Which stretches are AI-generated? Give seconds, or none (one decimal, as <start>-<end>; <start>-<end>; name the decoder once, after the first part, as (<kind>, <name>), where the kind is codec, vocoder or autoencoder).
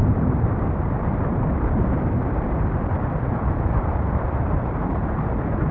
0.0-5.7 (vocoder, BigVGAN v2)